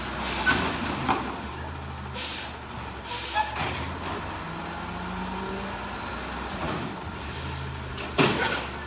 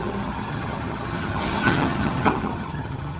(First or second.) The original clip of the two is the first